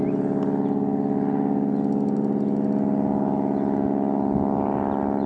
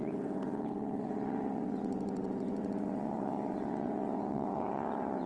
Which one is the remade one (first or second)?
second